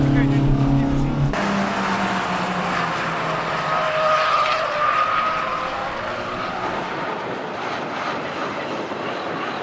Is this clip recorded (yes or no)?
yes